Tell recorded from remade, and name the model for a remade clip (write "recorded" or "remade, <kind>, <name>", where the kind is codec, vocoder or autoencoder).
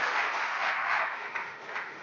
remade, autoencoder, DAC-VAE